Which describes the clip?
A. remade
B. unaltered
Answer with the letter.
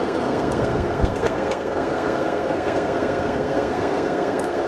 A